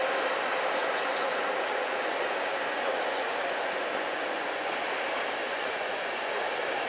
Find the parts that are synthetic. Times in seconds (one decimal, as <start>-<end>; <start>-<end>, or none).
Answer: 0.8-4.9; 5.4-6.3